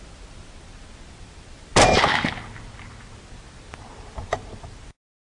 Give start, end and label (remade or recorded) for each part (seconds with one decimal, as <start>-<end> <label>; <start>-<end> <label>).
0.0-5.3 recorded